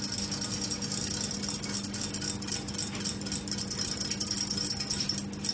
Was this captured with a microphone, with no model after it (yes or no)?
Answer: yes